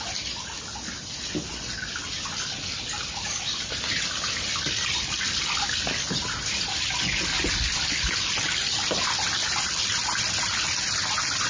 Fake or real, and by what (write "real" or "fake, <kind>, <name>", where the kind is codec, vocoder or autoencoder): real